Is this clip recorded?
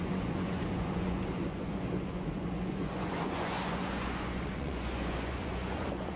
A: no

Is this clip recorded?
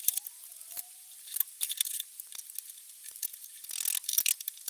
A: yes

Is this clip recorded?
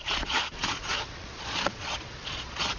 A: no